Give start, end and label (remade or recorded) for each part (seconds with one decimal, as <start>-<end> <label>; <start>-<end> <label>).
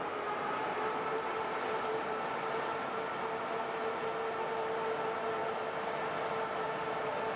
0.0-0.6 recorded; 0.6-2.3 remade; 2.3-7.4 recorded